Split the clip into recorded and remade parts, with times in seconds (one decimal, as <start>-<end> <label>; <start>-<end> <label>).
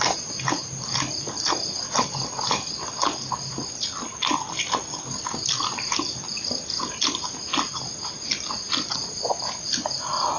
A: 0.0-4.9 recorded; 4.9-5.4 remade; 5.4-10.4 recorded